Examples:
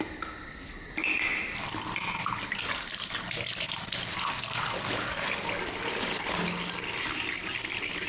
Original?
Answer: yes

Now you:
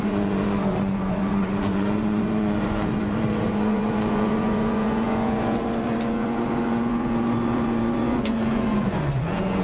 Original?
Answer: no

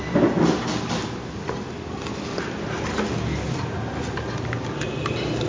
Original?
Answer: yes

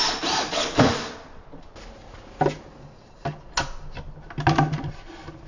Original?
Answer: yes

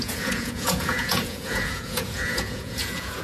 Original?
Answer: no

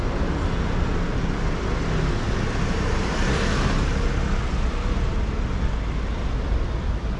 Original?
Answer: yes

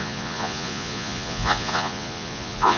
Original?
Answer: no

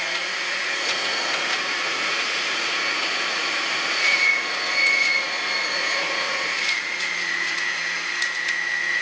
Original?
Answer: no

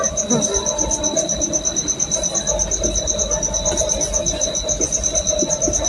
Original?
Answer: yes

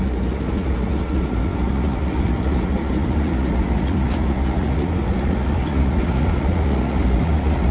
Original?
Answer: no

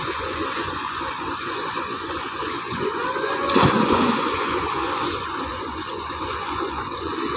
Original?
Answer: no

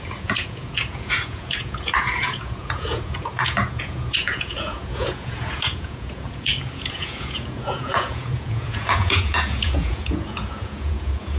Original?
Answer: no